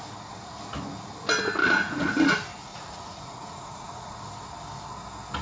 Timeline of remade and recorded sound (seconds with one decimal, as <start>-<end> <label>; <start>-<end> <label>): 0.0-1.6 recorded; 1.6-2.3 remade; 2.3-2.7 recorded; 2.7-4.2 remade; 4.2-5.4 recorded